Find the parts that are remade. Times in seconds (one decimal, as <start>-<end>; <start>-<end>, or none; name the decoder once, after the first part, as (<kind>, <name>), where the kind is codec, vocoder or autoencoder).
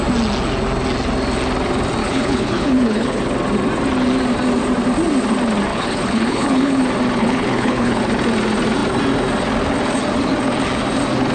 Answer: 2.0-3.2 (codec, HILCodec); 5.7-6.8; 7.2-8.0